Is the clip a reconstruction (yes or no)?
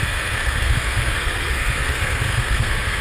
yes